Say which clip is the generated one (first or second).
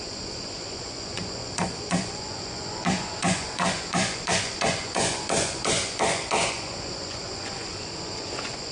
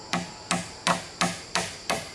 first